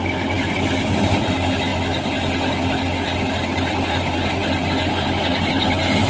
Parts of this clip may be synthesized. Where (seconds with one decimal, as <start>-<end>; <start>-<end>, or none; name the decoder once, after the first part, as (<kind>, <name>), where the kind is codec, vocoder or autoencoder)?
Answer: none